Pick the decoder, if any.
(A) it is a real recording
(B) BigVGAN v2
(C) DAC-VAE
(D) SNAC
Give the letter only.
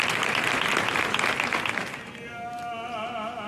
A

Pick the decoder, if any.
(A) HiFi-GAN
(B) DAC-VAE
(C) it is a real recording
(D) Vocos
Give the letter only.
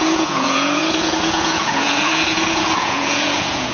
D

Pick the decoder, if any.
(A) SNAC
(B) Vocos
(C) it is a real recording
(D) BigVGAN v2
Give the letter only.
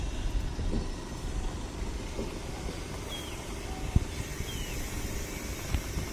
C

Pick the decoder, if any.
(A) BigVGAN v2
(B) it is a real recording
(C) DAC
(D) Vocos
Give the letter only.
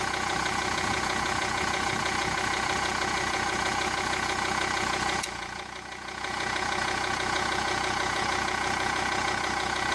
D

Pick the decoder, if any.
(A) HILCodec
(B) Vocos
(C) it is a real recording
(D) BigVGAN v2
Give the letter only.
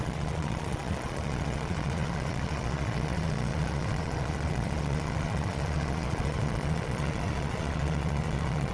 B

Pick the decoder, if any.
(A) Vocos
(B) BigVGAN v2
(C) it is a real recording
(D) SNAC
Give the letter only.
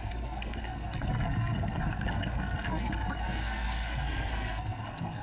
D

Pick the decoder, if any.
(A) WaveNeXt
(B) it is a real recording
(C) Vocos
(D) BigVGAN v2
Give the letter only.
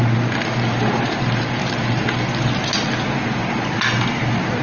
B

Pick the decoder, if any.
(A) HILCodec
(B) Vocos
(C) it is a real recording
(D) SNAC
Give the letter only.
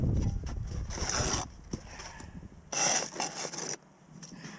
C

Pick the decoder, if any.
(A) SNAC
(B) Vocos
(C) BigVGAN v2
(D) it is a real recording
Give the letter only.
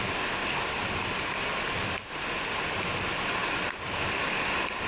D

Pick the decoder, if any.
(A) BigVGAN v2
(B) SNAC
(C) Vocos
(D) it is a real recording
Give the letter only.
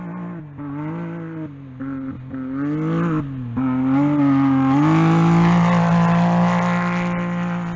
D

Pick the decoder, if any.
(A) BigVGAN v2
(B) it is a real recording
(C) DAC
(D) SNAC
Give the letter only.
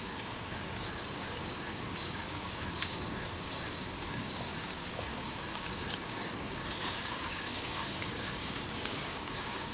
C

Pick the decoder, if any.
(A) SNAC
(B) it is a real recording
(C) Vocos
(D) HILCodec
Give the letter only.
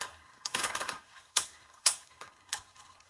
A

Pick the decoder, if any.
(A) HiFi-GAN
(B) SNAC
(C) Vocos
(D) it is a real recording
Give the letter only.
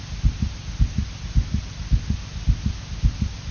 D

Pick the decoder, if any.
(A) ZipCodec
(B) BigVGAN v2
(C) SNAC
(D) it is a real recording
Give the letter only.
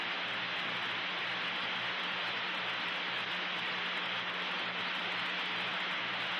D